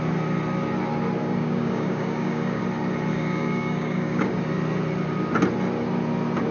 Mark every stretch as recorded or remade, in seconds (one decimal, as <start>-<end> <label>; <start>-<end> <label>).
0.0-1.2 recorded; 1.2-2.6 remade; 2.6-3.1 recorded; 3.1-4.4 remade; 4.4-6.5 recorded